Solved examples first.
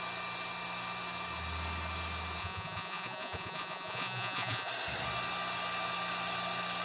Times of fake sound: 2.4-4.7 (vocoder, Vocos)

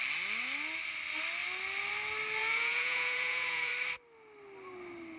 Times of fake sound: 2.4-3.7 (vocoder, Vocos)

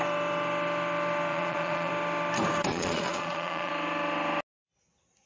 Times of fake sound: 1.3-1.9 (vocoder, Vocos); 2.7-3.7